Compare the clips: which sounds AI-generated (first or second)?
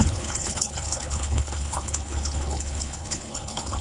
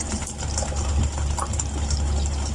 first